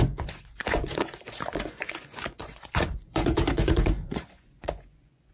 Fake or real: fake